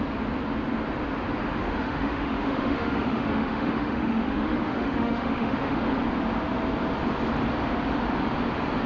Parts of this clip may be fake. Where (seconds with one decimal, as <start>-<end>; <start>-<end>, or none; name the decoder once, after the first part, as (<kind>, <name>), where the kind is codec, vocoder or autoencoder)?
1.6-5.8 (autoencoder, DAC-VAE)